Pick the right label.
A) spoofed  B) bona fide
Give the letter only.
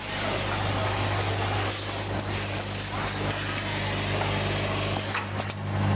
B